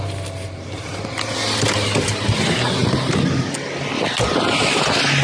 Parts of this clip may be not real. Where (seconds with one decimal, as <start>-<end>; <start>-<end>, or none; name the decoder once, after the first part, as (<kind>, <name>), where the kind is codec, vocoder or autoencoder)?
none